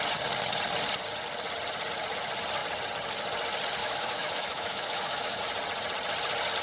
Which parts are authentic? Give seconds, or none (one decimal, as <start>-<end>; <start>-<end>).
0.0-3.8; 5.4-6.6